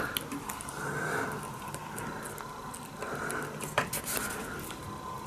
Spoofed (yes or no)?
no